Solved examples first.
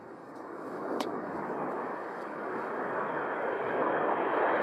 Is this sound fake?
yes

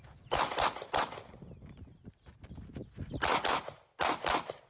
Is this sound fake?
no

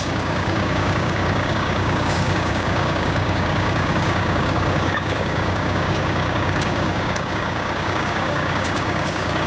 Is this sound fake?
yes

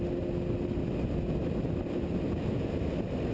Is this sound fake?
no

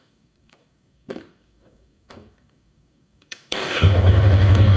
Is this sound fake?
yes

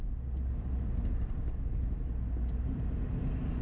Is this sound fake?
no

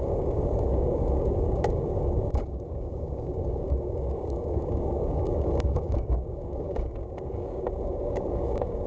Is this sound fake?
yes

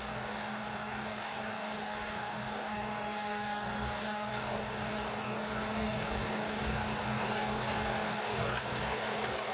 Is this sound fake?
yes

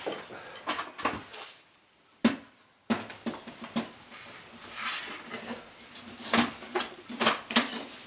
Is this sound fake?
no